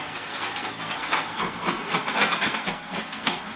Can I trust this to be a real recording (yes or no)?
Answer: no